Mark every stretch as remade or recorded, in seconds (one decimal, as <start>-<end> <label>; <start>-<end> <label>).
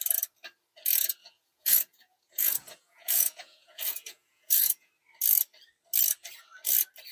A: 0.0-1.2 recorded; 1.2-4.9 remade; 4.9-7.1 recorded